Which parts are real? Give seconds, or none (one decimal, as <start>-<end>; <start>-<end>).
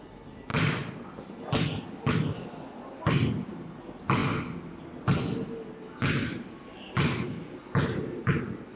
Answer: 0.0-8.8